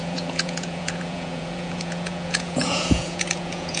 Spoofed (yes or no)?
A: yes